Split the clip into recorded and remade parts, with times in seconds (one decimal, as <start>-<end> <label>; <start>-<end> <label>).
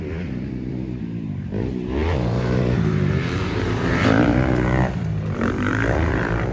0.0-0.7 recorded; 0.7-6.5 remade